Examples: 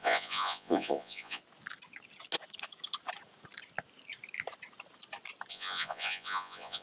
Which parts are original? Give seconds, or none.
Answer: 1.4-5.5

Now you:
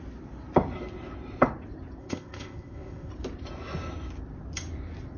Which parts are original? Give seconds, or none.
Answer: 0.0-2.0; 3.1-5.2

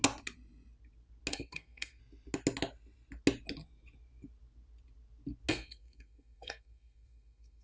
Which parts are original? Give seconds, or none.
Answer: 0.0-1.3; 2.0-5.5

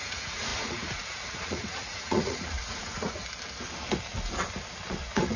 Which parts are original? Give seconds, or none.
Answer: 3.2-4.9

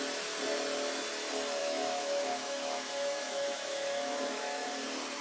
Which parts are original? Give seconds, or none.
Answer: 0.0-1.6; 4.7-5.2